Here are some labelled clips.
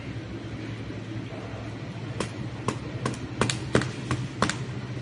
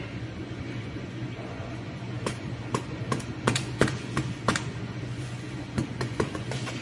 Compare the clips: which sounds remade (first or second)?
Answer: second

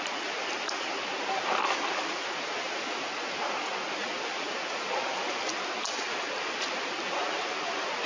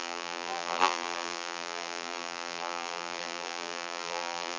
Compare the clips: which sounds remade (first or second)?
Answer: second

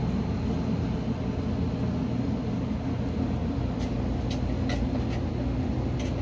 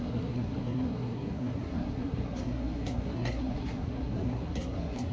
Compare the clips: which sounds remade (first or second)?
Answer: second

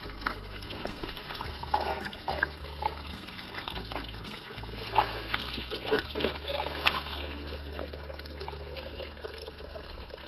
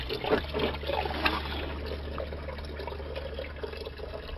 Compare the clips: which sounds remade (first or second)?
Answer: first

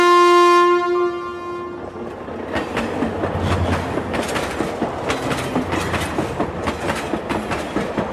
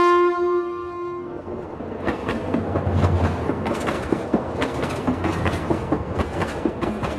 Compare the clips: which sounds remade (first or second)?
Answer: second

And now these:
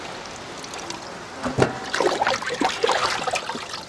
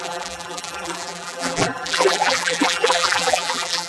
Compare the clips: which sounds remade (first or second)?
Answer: second